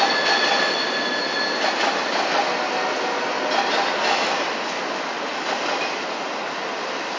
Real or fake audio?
real